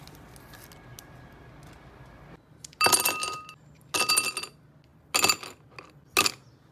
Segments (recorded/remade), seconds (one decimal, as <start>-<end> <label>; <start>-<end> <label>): 0.0-6.7 recorded